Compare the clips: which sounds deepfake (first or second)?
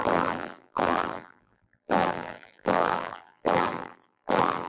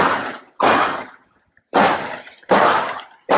first